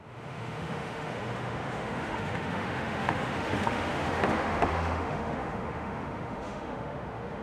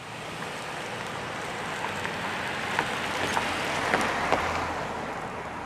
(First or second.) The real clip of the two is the second